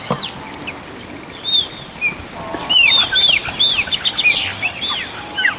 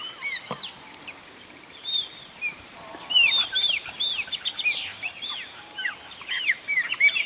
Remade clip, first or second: second